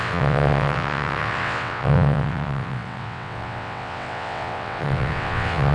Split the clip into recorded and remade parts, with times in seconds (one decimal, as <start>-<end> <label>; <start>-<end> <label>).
0.0-5.7 remade